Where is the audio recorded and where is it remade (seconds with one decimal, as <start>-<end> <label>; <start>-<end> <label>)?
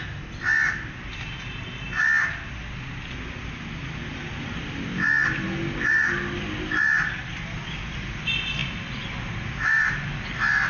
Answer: 0.0-10.7 recorded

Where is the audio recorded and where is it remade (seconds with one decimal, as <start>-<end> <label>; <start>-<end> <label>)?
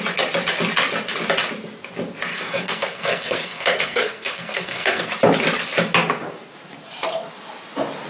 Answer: 0.0-2.3 recorded; 2.3-5.1 remade; 5.1-8.1 recorded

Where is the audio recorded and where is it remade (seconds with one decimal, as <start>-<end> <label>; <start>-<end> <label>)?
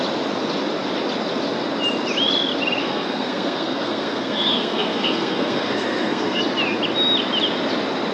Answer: 0.0-2.8 recorded; 2.8-6.4 remade; 6.4-8.1 recorded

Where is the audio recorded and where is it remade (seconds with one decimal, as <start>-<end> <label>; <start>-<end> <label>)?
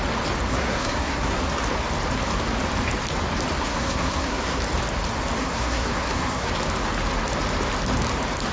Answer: 0.0-0.5 recorded; 0.5-1.4 remade; 1.4-3.6 recorded; 3.6-4.6 remade; 4.6-5.4 recorded; 5.4-6.5 remade; 6.5-8.5 recorded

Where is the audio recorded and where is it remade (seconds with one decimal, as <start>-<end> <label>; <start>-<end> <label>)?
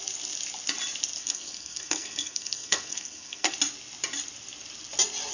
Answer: 0.0-1.2 recorded; 1.2-3.5 remade; 3.5-5.3 recorded